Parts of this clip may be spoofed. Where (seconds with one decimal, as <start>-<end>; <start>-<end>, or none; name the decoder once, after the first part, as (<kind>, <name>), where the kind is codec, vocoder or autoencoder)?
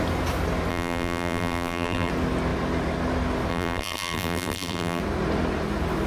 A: 0.7-2.1 (vocoder, BigVGAN v2); 3.5-5.0